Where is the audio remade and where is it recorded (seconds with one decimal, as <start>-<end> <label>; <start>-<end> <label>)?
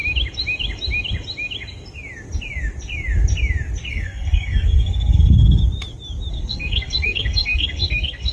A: 0.0-3.9 recorded; 3.9-5.6 remade; 5.6-6.3 recorded; 6.3-8.3 remade